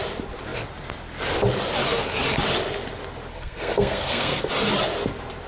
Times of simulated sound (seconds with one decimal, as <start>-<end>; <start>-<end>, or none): 3.3-4.5